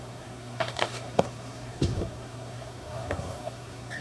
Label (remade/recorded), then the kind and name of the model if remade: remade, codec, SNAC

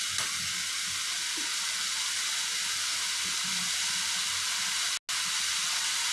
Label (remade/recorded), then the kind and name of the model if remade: recorded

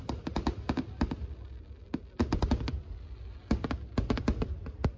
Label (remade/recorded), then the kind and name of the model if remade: recorded